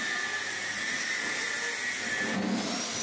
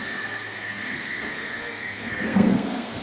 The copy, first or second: second